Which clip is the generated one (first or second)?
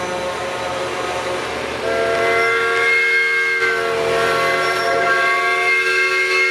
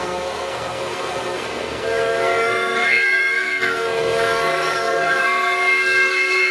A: second